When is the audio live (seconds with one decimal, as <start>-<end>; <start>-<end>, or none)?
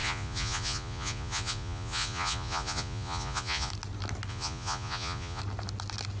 3.7-4.3; 5.4-6.2